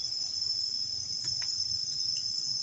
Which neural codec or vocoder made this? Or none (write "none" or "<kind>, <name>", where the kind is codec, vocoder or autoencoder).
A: none